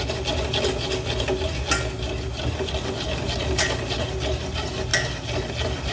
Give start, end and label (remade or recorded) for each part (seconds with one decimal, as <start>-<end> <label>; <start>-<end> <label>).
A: 0.0-5.9 recorded